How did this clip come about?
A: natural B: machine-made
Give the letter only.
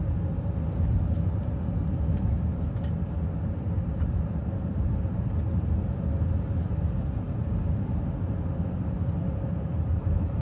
A